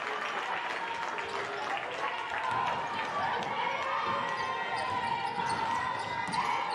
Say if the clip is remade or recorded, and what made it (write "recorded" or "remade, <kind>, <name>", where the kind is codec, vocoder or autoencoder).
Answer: recorded